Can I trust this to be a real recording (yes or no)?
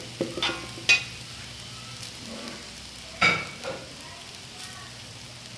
yes